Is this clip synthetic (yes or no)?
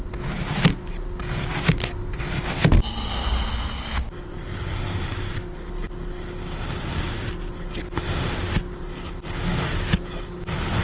no